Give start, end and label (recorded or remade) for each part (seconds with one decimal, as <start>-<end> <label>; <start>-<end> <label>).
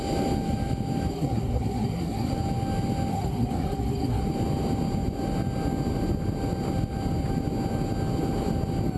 0.0-1.1 recorded; 1.1-2.3 remade; 2.3-3.1 recorded; 3.1-4.2 remade; 4.2-9.0 recorded